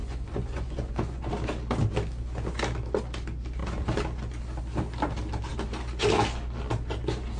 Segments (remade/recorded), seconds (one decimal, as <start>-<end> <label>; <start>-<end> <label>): 0.0-1.3 remade; 1.3-7.4 recorded